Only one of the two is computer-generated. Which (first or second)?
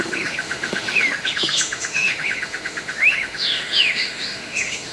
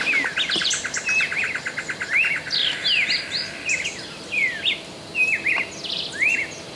first